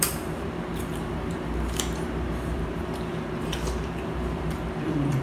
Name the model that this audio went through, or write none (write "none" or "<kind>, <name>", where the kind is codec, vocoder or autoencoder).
vocoder, BigVGAN v2